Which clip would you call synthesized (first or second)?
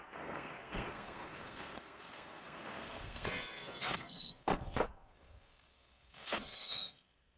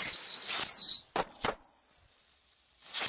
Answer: first